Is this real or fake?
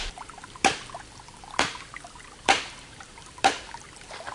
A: fake